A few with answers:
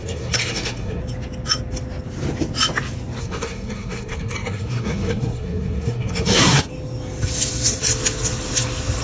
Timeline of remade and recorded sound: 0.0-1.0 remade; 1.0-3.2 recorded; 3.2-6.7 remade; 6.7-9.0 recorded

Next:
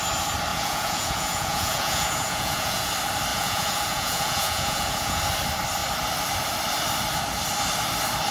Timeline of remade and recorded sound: 0.0-0.5 recorded; 0.5-2.9 remade; 2.9-3.3 recorded; 3.3-5.2 remade; 5.2-8.3 recorded

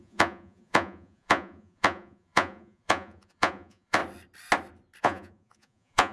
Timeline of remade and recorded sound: 0.0-4.0 remade; 4.0-5.0 recorded; 5.0-6.1 remade

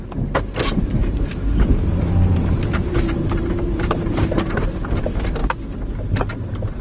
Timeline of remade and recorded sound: 0.0-1.0 recorded; 1.0-4.7 remade; 4.7-6.8 recorded

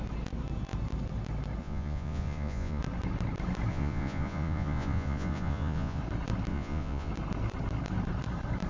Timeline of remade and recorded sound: 0.0-1.6 recorded; 1.6-2.8 remade; 2.8-3.7 recorded; 3.7-6.0 remade; 6.0-6.5 recorded; 6.5-7.1 remade; 7.1-8.7 recorded

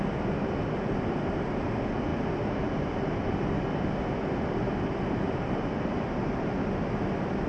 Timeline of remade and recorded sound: 0.0-7.5 recorded

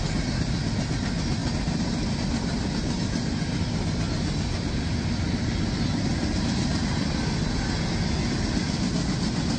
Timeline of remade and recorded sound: 0.0-9.6 recorded